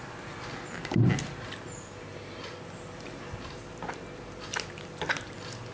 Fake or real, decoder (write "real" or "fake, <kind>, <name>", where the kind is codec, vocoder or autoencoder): real